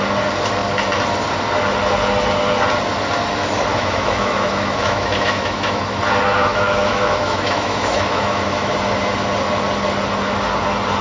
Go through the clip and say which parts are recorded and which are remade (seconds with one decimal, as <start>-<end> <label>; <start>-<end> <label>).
0.0-3.7 recorded; 3.7-6.0 remade; 6.0-6.5 recorded; 6.5-8.7 remade; 8.7-11.0 recorded